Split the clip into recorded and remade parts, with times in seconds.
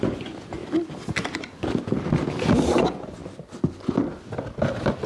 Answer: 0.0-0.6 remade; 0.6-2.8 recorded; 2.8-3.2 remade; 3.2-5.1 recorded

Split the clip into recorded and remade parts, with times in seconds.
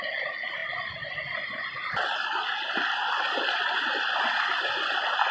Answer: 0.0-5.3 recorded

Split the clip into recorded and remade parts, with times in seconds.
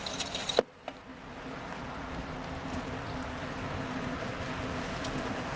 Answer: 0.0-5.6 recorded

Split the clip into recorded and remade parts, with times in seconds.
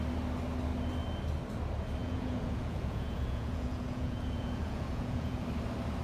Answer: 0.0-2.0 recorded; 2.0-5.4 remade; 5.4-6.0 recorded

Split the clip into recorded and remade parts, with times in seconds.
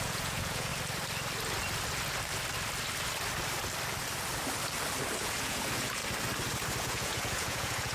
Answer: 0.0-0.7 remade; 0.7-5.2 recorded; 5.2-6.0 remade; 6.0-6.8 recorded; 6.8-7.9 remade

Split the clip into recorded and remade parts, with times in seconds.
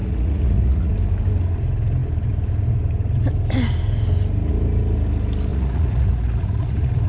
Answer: 0.0-0.9 remade; 0.9-5.5 recorded; 5.5-7.1 remade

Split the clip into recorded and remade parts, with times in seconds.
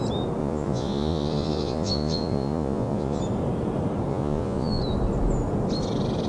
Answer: 0.0-0.4 recorded; 0.4-3.2 remade; 3.2-4.1 recorded; 4.1-4.8 remade; 4.8-6.3 recorded